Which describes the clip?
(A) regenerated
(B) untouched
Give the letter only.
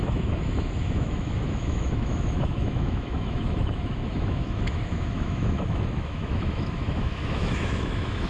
A